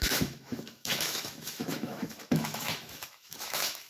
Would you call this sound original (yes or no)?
no